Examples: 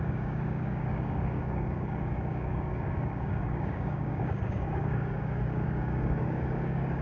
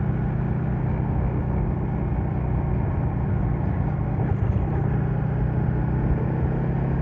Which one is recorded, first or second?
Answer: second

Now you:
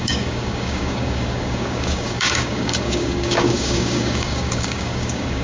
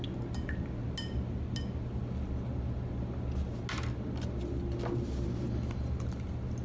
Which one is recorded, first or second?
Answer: second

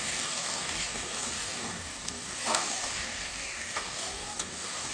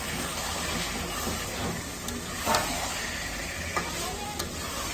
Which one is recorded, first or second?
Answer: second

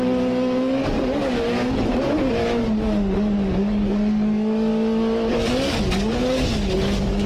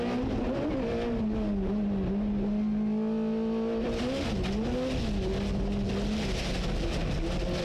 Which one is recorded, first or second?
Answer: second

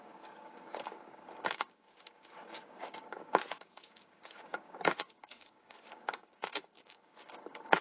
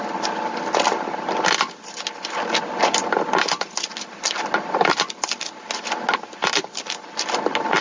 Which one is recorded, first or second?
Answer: second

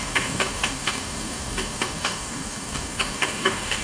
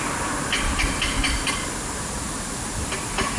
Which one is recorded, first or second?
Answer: second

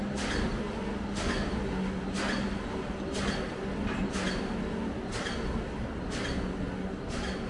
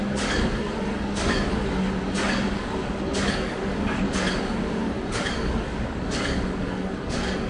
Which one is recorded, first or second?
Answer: first